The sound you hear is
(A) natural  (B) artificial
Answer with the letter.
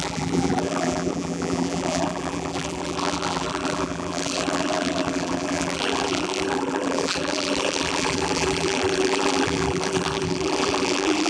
B